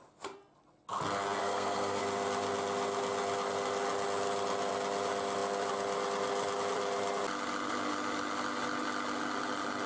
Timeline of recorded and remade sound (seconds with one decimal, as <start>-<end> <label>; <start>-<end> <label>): 0.0-1.4 recorded; 1.4-2.0 remade; 2.0-9.9 recorded